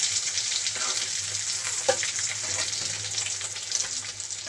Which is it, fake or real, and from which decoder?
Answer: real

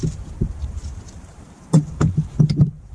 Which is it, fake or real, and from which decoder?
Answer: fake, vocoder, BigVGAN v2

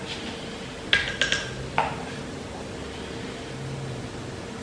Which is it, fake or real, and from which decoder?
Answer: real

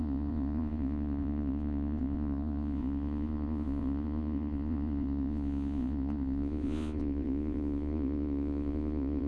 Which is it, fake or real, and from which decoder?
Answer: fake, vocoder, Vocos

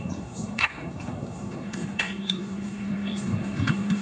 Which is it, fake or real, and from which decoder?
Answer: fake, codec, SNAC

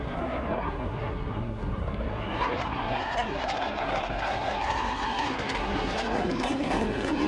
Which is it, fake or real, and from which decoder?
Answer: fake, codec, SNAC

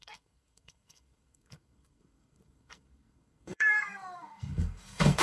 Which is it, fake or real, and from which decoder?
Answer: fake, codec, SNAC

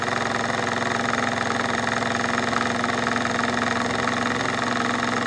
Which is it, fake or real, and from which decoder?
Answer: real